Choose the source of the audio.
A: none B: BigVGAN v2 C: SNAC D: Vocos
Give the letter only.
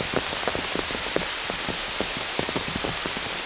A